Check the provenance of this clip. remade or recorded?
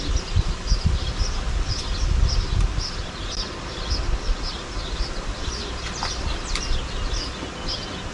recorded